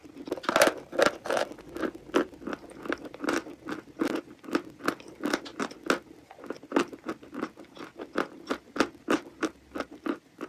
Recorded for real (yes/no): yes